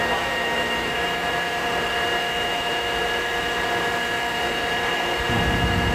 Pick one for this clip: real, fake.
real